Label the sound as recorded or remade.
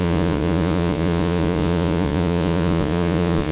remade